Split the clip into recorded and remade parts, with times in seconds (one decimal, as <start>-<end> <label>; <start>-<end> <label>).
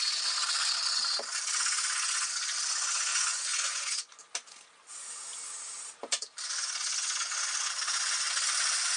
0.0-3.1 recorded; 3.1-4.2 remade; 4.2-9.0 recorded